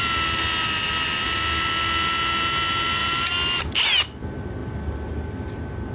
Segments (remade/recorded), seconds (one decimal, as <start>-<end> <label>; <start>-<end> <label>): 0.0-3.0 recorded; 3.0-3.6 remade; 3.6-4.6 recorded; 4.6-5.1 remade; 5.1-5.9 recorded